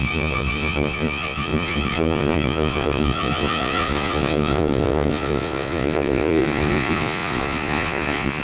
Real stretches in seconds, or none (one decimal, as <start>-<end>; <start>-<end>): none